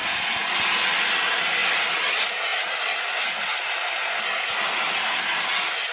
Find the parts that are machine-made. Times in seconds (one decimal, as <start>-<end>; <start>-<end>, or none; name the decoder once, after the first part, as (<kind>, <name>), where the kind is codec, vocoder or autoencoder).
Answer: none